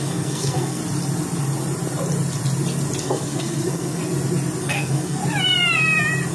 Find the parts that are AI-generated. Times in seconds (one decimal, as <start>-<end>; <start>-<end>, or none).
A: 0.0-0.8; 3.0-4.0; 4.6-5.2